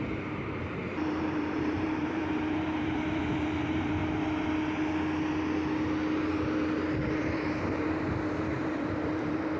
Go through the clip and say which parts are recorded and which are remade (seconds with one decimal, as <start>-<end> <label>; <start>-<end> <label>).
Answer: 0.0-4.0 remade; 4.0-7.2 recorded; 7.2-9.6 remade